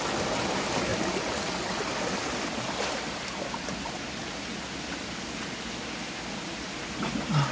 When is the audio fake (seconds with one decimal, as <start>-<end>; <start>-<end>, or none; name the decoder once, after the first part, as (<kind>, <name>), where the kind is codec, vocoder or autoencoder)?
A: none